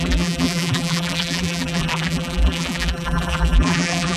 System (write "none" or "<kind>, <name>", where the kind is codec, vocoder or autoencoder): vocoder, BigVGAN v2